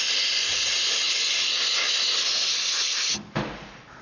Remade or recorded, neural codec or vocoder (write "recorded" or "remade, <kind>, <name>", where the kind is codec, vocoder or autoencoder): recorded